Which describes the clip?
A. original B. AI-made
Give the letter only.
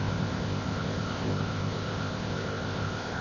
B